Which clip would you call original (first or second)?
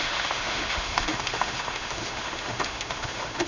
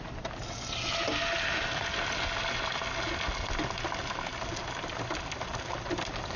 second